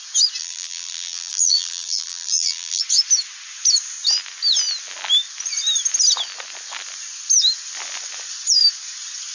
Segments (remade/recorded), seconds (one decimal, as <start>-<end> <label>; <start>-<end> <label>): 0.0-0.4 recorded; 0.4-2.8 remade; 2.8-9.3 recorded